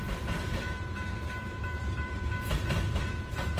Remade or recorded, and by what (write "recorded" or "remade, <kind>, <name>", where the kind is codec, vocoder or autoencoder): remade, vocoder, BigVGAN v2